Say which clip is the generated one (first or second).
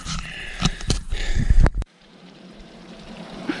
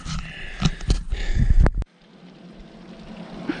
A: first